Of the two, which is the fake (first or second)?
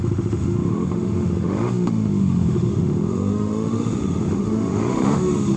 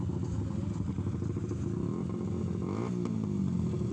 first